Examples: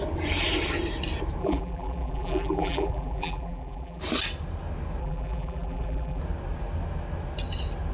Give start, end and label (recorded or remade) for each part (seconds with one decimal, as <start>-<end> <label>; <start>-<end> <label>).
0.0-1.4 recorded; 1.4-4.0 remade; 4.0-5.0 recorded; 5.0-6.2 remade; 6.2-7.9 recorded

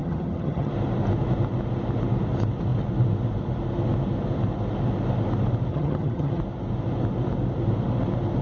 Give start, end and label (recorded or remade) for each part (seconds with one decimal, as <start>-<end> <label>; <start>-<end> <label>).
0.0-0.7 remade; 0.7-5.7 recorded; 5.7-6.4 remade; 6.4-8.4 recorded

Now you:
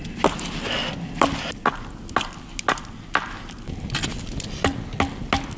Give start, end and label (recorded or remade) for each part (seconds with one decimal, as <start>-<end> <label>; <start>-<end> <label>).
0.0-5.6 recorded